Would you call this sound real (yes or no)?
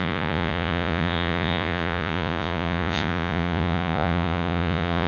no